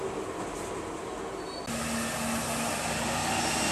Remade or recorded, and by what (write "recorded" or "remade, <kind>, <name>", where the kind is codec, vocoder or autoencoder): recorded